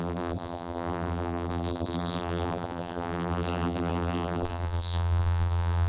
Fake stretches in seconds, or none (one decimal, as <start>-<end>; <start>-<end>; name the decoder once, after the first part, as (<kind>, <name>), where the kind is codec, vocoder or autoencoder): 0.0-5.9 (vocoder, BigVGAN v2)